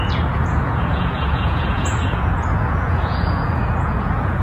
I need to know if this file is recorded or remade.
remade